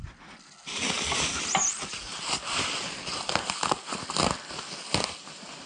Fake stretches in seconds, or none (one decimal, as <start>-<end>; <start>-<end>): none